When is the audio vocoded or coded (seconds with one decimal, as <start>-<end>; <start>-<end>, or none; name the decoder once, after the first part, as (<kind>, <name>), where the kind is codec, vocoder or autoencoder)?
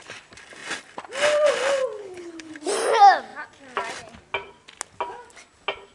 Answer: 2.0-2.5 (codec, HILCodec)